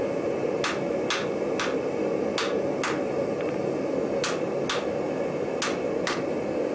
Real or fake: real